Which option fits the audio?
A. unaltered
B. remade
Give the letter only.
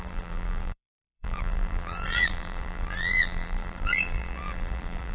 B